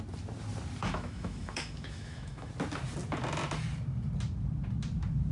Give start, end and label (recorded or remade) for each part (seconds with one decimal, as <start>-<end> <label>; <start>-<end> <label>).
0.0-0.8 recorded; 0.8-2.5 remade; 2.5-5.3 recorded